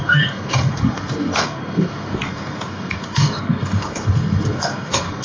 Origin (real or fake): fake